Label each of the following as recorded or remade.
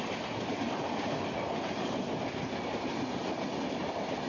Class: recorded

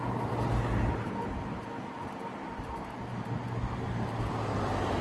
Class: recorded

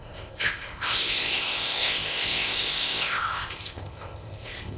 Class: remade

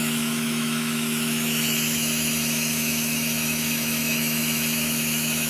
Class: remade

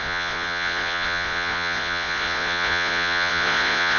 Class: remade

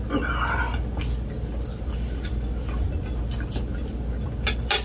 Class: recorded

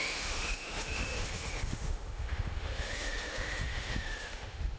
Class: remade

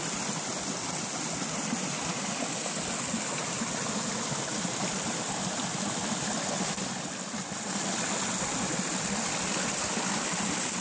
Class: recorded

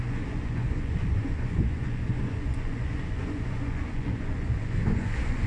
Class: remade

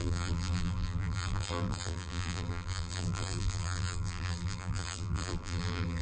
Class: remade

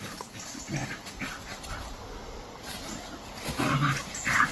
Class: recorded